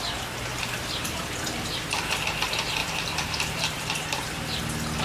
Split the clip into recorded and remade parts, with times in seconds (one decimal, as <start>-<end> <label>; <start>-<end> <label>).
0.0-0.5 recorded; 0.5-1.3 remade; 1.3-2.8 recorded; 2.8-4.6 remade; 4.6-5.0 recorded